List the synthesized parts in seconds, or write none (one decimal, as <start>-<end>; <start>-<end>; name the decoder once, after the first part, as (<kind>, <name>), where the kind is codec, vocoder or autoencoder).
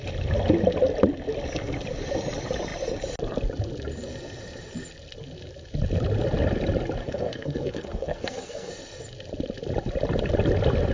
7.0-8.7 (codec, SNAC)